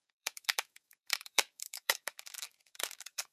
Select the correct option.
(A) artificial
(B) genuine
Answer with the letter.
A